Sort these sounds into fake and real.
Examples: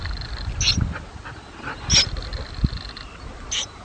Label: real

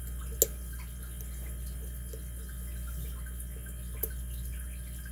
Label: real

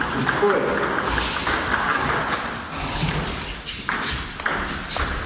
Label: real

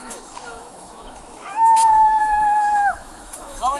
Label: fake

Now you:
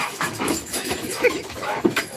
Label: fake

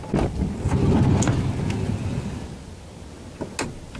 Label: real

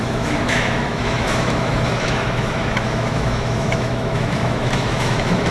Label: fake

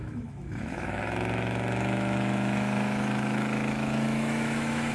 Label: fake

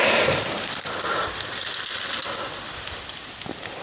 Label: real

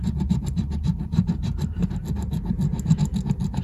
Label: real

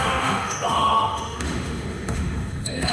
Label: fake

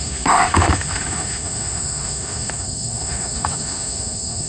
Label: fake